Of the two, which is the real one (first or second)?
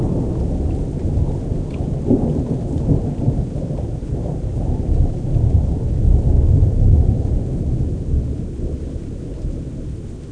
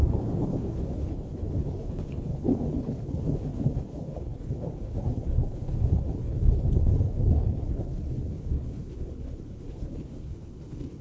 first